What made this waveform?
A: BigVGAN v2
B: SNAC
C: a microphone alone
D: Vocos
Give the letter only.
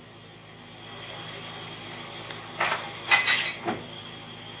C